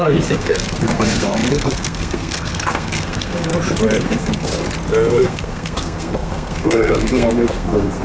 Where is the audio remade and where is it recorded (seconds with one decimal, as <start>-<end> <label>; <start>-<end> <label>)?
0.0-3.5 remade; 3.5-4.0 recorded; 4.0-4.5 remade; 4.5-5.1 recorded; 5.1-8.0 remade